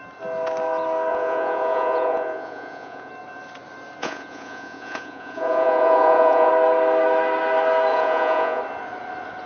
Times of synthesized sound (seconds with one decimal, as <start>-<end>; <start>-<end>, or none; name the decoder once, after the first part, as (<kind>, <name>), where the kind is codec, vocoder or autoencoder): 1.1-3.1 (vocoder, Vocos); 4.0-6.5; 7.9-8.6